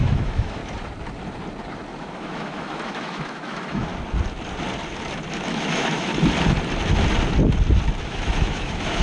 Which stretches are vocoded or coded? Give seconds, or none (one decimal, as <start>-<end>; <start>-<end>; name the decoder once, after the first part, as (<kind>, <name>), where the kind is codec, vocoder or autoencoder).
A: 0.0-0.6 (autoencoder, DAC-VAE); 2.0-3.9; 5.3-6.1; 8.0-9.0